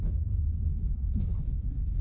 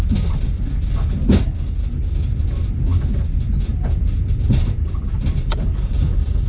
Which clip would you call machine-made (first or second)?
first